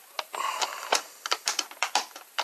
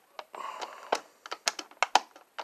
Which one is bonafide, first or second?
second